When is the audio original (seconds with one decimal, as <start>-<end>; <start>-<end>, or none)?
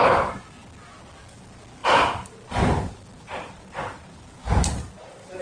0.0-5.4